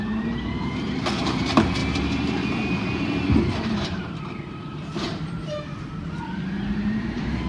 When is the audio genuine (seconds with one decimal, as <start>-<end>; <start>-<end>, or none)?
none